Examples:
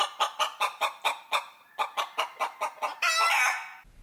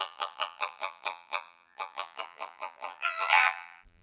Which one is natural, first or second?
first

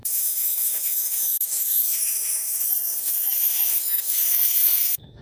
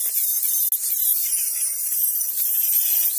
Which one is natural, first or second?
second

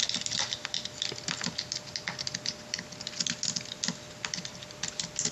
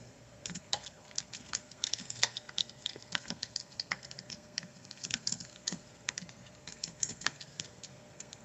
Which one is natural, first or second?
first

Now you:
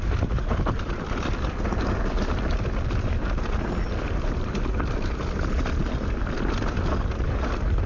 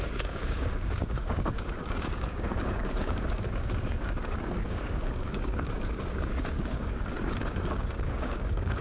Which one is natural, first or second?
first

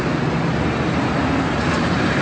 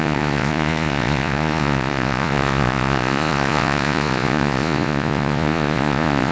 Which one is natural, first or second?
first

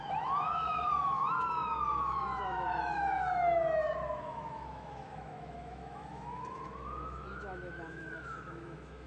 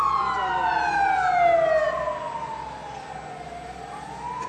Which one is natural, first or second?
second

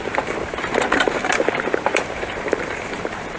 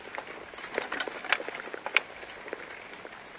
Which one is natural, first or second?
second